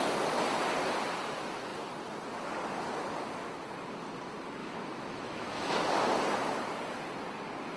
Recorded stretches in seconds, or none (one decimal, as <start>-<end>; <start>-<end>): 0.0-4.6; 5.7-7.8